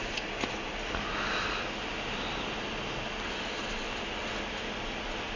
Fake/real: real